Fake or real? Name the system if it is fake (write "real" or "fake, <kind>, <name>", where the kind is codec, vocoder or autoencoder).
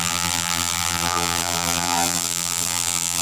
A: fake, vocoder, BigVGAN v2